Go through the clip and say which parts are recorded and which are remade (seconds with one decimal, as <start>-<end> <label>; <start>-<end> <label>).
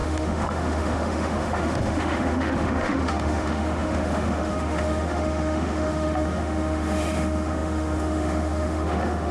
0.0-9.3 remade